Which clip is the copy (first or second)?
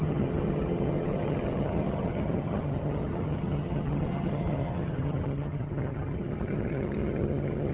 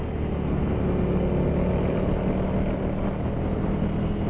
first